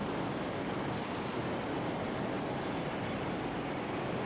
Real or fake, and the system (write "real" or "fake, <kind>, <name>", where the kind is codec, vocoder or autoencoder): real